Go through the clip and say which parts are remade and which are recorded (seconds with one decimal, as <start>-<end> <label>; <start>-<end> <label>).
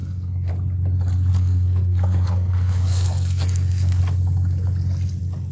0.0-0.5 remade; 0.5-1.3 recorded; 1.3-4.0 remade; 4.0-5.5 recorded